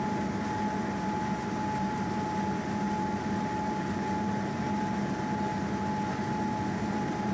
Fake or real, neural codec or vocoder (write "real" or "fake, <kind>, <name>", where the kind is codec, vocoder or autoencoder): real